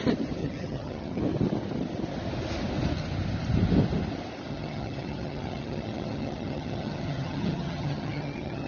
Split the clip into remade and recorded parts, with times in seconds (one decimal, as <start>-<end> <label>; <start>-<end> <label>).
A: 0.0-0.4 recorded; 0.4-1.2 remade; 1.2-4.5 recorded; 4.5-8.7 remade